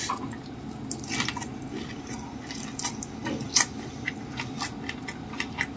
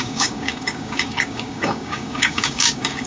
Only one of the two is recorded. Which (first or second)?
first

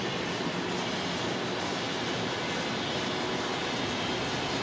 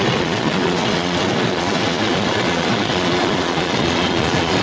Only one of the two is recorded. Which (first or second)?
first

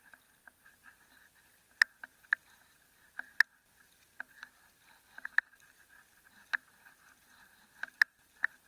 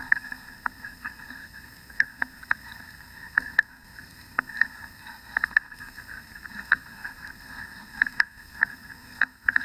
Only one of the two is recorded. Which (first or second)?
first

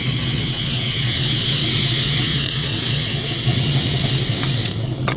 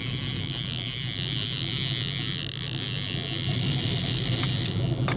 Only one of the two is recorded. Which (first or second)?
second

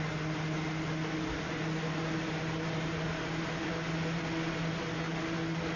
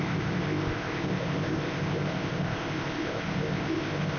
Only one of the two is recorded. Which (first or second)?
first